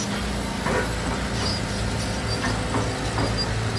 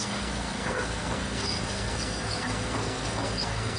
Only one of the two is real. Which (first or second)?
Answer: first